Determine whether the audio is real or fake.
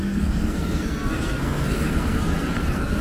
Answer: fake